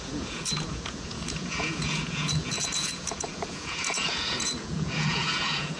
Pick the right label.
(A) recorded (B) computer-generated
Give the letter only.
B